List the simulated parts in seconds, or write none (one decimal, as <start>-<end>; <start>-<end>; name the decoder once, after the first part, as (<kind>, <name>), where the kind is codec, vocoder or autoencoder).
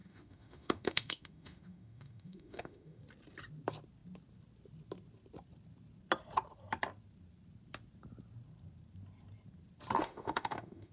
0.0-3.0 (autoencoder, DAC-VAE); 10.0-10.9